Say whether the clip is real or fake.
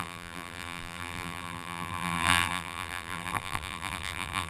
fake